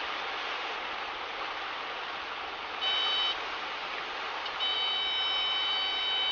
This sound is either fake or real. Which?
real